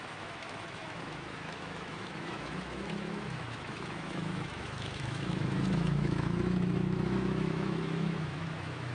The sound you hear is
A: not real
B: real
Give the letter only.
A